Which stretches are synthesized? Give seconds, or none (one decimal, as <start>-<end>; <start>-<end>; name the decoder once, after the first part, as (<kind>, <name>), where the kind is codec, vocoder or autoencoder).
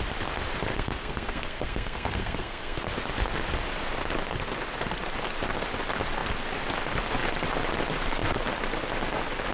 0.7-2.8 (codec, SNAC)